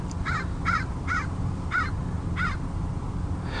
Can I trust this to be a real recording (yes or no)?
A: yes